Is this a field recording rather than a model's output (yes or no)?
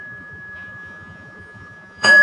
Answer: no